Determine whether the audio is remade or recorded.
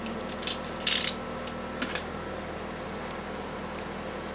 recorded